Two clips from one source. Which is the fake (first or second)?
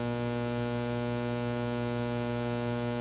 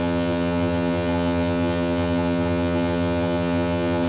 second